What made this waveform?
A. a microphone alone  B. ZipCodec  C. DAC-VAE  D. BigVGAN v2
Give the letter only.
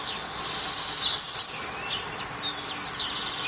A